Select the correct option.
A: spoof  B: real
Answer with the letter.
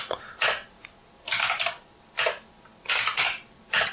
B